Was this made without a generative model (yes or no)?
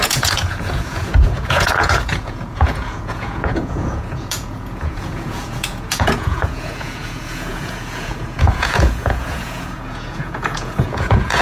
no